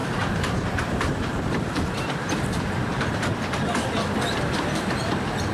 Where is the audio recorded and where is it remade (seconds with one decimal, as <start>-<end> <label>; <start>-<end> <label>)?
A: 0.0-3.3 remade; 3.3-5.5 recorded